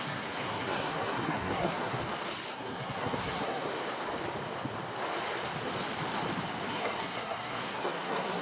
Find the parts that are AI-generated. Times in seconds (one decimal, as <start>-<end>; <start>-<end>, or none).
0.0-2.0; 2.5-3.7; 6.7-8.4